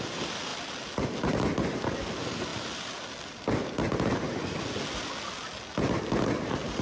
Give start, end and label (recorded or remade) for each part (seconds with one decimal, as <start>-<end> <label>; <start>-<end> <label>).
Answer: 0.0-6.8 recorded